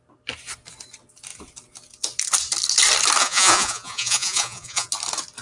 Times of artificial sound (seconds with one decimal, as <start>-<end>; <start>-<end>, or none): 3.2-4.9